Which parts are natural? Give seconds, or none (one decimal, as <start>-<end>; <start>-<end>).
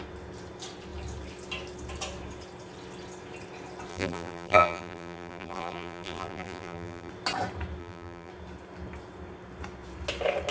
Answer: 0.0-3.9; 7.1-7.8; 8.3-10.5